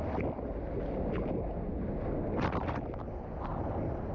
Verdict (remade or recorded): recorded